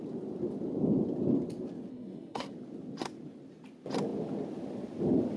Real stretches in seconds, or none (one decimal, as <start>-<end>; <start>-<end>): 0.0-1.9; 2.5-5.4